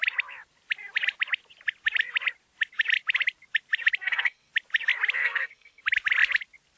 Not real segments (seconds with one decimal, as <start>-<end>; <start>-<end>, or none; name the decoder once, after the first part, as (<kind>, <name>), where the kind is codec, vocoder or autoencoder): 4.0-4.5 (codec, SNAC); 5.2-5.8